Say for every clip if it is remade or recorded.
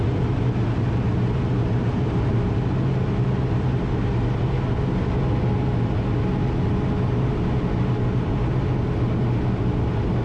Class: recorded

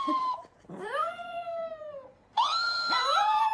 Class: remade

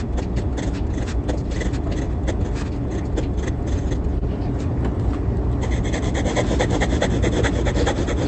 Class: recorded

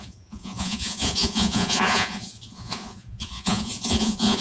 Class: remade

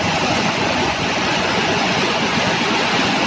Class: remade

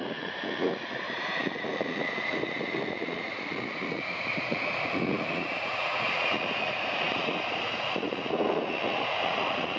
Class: remade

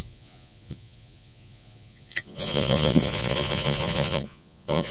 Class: remade